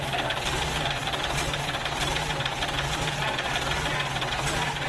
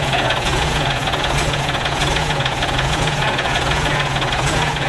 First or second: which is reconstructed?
second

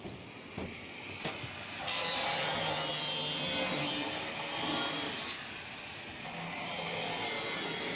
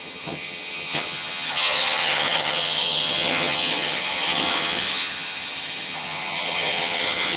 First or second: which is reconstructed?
second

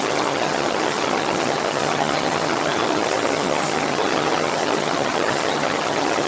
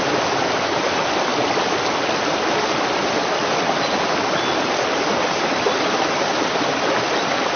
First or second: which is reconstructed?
first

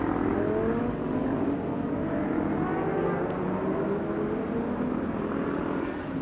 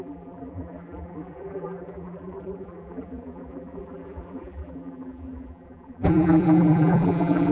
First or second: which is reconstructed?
second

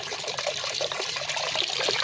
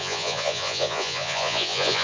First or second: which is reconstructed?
second